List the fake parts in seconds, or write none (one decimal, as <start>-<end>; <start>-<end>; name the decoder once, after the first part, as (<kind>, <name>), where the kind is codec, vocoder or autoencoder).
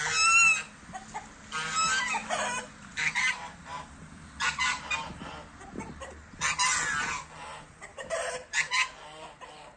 2.2-6.2 (vocoder, BigVGAN v2); 7.5-8.3